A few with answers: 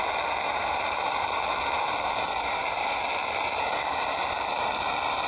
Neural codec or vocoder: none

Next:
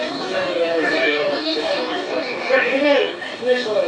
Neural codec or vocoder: codec, DAC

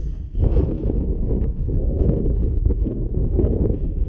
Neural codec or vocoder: codec, SNAC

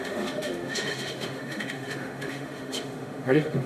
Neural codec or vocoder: autoencoder, DAC-VAE